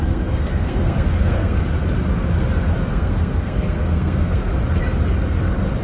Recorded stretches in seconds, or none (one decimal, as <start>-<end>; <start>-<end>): 1.6-2.9; 4.5-5.8